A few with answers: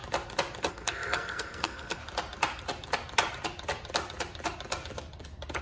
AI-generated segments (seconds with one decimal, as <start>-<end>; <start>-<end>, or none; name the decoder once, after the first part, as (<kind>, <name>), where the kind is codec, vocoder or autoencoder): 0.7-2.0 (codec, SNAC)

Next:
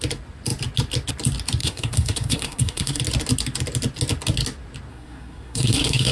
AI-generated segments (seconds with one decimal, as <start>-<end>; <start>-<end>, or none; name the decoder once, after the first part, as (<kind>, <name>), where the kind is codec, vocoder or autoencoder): 1.6-3.0 (codec, SNAC); 4.9-6.1

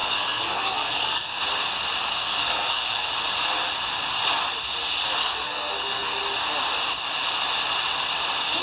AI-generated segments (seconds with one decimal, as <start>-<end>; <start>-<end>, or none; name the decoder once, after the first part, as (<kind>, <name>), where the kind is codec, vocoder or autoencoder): 0.0-1.4 (codec, SNAC); 2.1-3.1; 5.2-6.2

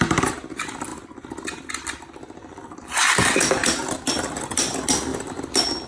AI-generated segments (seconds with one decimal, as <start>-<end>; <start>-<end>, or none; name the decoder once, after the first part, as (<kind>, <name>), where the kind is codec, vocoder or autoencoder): none

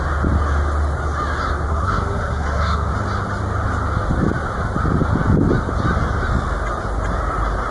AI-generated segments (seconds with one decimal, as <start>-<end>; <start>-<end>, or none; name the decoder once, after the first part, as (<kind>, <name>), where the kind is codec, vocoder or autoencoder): 1.7-2.9 (codec, SNAC)